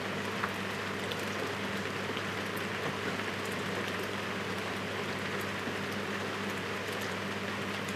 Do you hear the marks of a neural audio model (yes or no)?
no